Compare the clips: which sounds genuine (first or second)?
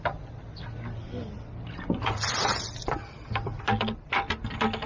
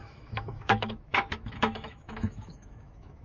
first